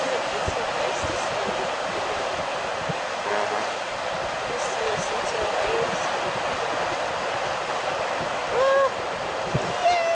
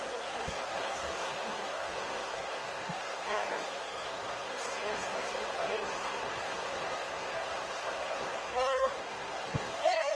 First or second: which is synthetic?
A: second